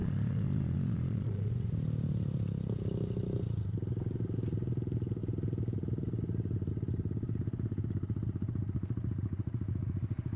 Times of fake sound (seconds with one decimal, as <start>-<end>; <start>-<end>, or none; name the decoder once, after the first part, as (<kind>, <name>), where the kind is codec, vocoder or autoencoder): 0.0-1.5 (vocoder, Vocos)